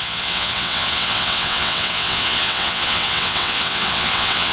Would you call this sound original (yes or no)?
no